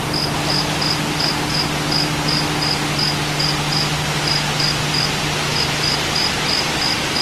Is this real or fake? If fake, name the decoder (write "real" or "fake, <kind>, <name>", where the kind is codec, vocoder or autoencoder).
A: real